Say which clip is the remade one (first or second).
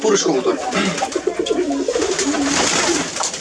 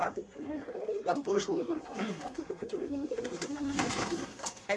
second